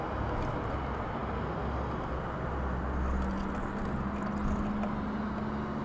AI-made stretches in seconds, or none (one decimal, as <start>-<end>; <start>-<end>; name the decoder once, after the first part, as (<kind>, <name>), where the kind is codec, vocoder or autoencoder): none